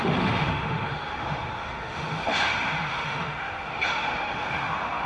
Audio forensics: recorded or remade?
remade